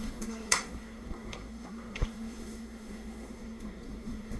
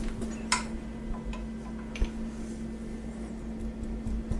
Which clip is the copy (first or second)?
first